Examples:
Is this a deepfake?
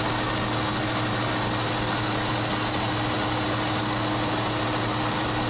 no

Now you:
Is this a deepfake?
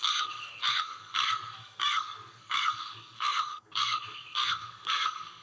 yes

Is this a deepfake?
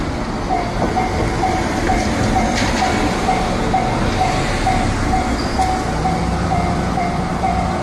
no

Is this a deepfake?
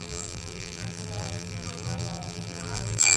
yes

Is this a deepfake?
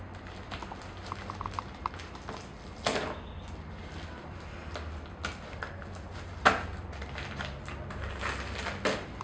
no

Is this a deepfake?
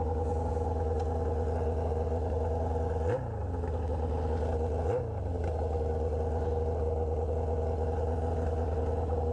no